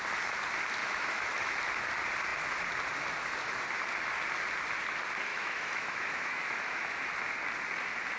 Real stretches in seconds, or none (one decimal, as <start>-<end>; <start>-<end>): 0.0-0.8; 1.6-5.3; 7.1-8.2